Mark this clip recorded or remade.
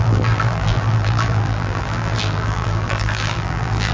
remade